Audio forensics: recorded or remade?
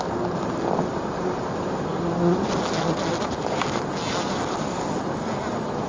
recorded